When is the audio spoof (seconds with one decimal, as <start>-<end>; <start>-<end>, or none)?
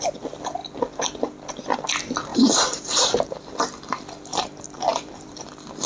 2.3-3.5; 4.3-5.5